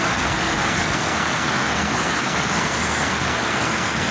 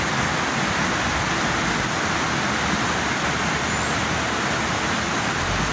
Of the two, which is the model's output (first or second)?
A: first